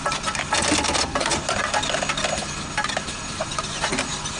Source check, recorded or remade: recorded